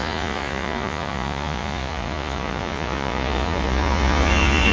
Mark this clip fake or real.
fake